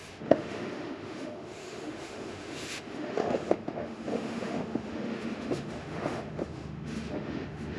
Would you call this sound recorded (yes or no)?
no